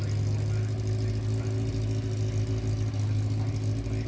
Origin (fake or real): real